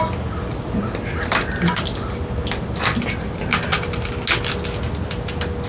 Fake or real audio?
real